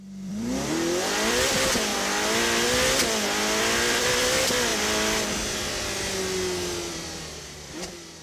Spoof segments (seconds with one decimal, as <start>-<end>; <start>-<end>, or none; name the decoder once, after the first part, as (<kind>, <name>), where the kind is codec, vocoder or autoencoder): 0.0-1.9 (vocoder, BigVGAN v2); 3.6-4.7; 6.9-8.2